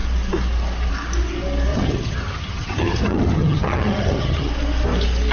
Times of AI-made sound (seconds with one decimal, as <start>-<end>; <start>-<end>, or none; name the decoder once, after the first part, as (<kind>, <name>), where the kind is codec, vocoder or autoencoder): 1.7-4.5 (vocoder, HiFi-GAN)